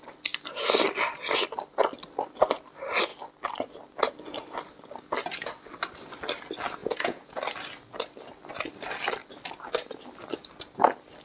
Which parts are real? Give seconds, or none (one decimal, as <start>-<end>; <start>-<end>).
0.0-6.8; 7.4-11.2